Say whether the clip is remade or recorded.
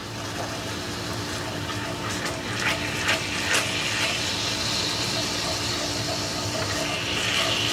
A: recorded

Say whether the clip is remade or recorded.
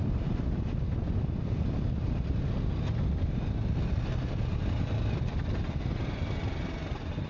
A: recorded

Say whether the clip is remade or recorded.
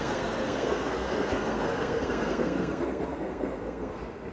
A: remade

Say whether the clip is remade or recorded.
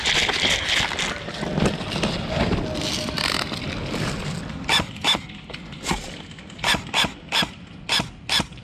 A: recorded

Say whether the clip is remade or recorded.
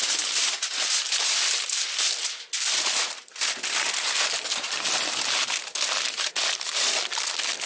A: recorded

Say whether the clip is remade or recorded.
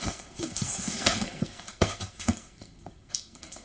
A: remade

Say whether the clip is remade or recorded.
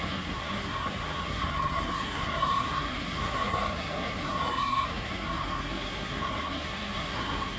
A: remade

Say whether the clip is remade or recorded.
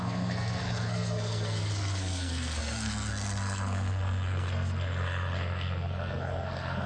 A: remade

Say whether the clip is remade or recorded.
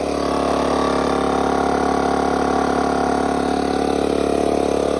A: recorded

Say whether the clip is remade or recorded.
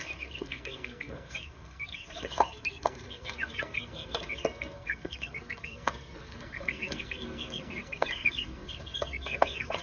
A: remade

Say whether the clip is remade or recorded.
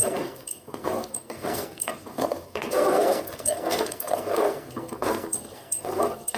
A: remade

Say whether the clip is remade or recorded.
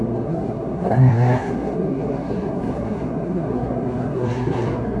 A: remade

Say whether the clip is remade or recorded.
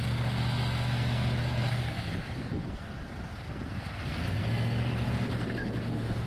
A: remade